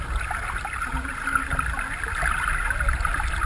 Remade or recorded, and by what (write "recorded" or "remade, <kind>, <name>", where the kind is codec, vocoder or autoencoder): recorded